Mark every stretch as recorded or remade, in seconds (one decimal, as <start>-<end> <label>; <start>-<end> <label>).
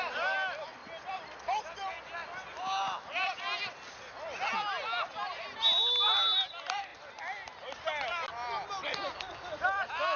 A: 0.0-10.2 recorded